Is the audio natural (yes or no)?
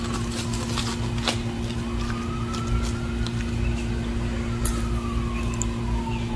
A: yes